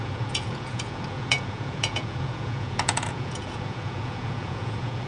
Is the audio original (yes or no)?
no